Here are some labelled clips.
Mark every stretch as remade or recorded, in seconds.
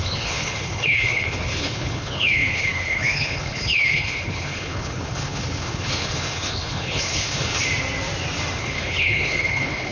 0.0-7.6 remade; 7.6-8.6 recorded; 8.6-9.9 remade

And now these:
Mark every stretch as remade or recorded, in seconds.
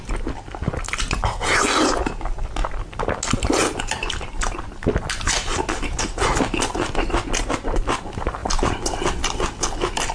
0.0-10.1 recorded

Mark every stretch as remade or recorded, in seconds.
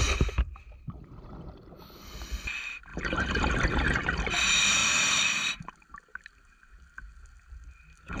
0.0-2.9 recorded; 2.9-3.5 remade; 3.5-4.8 recorded; 4.8-5.7 remade; 5.7-8.2 recorded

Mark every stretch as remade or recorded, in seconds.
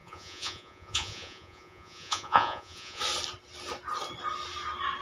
0.0-3.0 remade; 3.0-5.0 recorded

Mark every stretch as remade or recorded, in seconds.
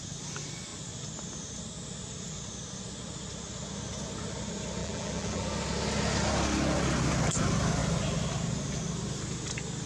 0.0-4.8 recorded; 4.8-5.5 remade; 5.5-9.9 recorded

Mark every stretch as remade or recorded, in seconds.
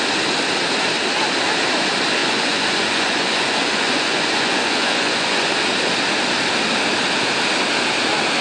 0.0-2.2 recorded; 2.2-5.5 remade; 5.5-8.4 recorded